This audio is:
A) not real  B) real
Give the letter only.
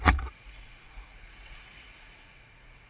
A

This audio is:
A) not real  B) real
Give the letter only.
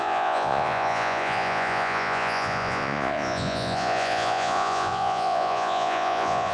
A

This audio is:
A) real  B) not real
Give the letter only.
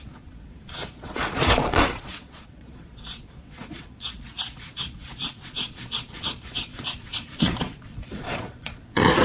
B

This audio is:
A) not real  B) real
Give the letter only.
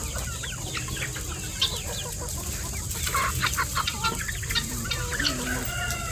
B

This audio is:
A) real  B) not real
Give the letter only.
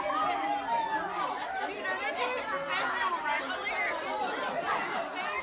A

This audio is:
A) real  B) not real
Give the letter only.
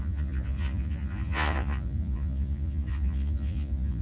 B